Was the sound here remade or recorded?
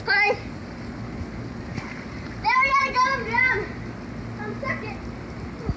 recorded